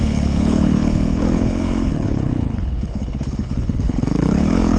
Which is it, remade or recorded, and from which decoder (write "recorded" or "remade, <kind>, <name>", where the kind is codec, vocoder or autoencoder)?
remade, codec, HILCodec